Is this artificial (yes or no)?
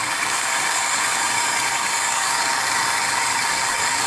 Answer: yes